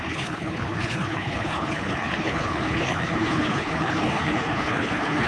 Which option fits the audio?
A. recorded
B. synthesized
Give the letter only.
B